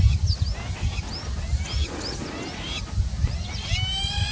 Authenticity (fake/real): real